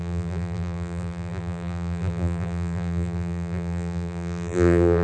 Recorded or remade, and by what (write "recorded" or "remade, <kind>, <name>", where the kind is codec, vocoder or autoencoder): remade, vocoder, BigVGAN v2